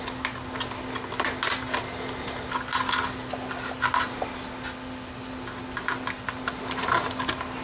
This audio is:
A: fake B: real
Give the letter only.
B